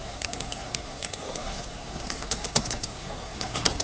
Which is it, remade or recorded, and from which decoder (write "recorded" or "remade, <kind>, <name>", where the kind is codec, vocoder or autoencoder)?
remade, codec, SNAC